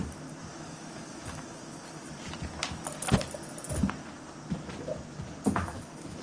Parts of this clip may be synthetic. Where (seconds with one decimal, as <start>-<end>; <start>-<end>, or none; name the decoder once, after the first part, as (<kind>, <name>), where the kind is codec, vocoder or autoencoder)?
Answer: 0.5-1.8 (autoencoder, DAC-VAE); 5.6-6.2